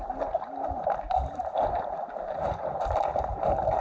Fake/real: fake